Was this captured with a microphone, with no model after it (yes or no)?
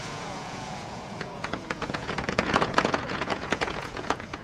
no